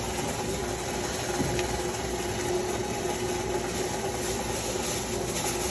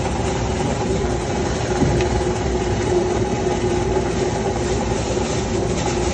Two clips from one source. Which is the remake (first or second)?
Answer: second